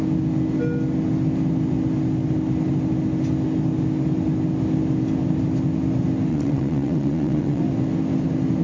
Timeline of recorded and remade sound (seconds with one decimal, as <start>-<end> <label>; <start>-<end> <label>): 0.0-6.3 recorded; 6.3-7.6 remade; 7.6-8.6 recorded